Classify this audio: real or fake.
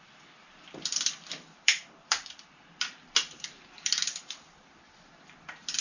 fake